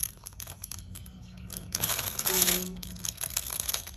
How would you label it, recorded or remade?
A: remade